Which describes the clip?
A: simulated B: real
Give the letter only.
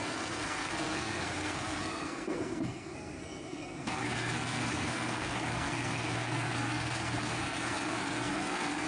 A